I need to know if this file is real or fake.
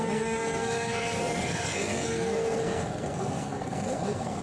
fake